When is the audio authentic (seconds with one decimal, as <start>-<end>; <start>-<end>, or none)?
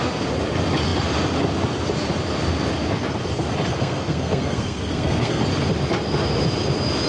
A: 0.0-3.7; 5.4-7.1